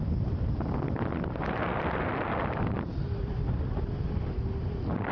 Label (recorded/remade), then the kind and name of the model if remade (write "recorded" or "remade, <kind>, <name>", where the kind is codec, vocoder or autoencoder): recorded